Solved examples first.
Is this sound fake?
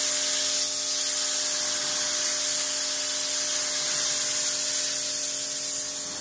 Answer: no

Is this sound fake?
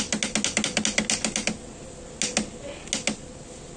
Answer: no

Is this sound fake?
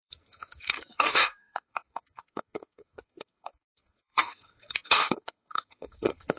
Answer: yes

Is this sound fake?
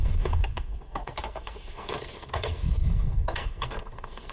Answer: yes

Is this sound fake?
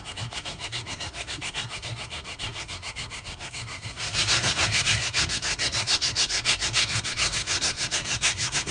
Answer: yes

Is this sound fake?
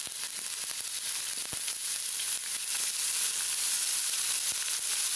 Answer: no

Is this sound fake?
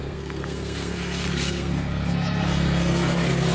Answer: yes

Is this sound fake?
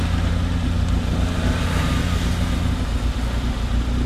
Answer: no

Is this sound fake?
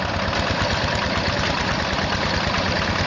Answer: no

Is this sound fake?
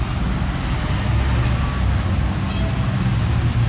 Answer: no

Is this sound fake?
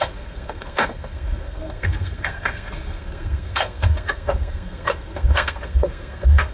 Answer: yes